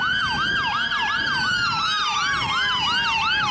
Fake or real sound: real